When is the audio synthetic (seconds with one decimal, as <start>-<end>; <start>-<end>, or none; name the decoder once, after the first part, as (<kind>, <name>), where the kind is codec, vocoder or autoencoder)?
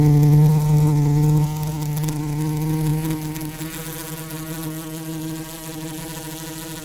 none